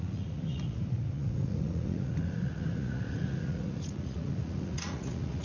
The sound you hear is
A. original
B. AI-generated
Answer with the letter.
B